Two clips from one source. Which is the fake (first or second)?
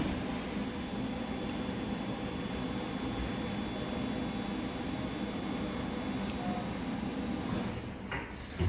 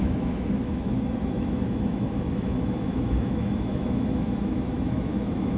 second